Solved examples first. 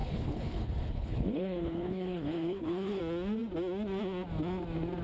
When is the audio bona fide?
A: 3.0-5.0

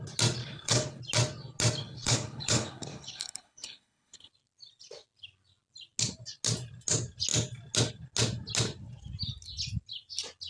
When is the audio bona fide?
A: 0.0-0.4; 1.0-1.8; 4.3-10.5

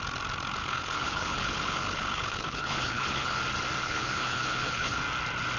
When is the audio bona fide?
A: 0.0-0.6; 3.4-3.8; 5.0-5.6

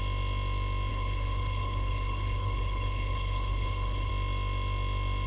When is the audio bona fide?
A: 0.0-0.9; 4.1-5.3

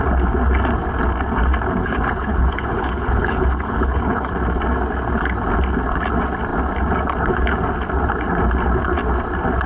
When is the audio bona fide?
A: 0.0-1.8; 4.3-9.7